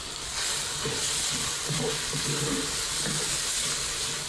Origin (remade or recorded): recorded